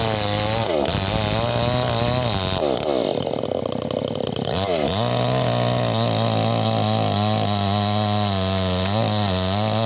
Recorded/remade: recorded